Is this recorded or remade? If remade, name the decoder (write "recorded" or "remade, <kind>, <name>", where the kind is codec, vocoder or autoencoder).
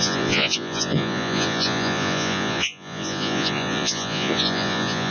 remade, vocoder, Vocos